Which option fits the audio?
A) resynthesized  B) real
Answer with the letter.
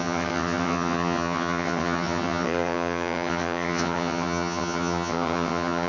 A